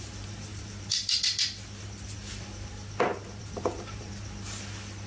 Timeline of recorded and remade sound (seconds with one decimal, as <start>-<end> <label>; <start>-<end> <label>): 0.0-0.5 recorded; 0.5-1.2 remade; 1.2-3.1 recorded; 3.1-4.1 remade; 4.1-5.1 recorded